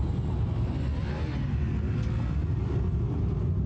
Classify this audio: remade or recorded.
recorded